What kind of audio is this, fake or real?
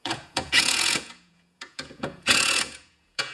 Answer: fake